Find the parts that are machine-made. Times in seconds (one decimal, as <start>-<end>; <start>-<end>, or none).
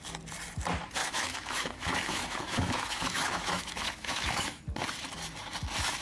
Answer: 1.0-4.6